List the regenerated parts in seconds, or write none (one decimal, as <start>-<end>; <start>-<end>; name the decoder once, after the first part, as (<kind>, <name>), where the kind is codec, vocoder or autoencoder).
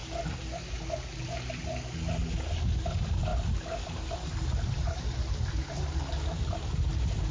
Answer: none